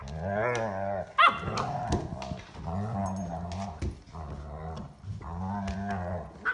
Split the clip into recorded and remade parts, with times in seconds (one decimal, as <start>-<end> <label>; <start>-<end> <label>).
0.0-6.5 recorded